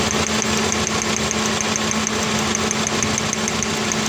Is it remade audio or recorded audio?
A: recorded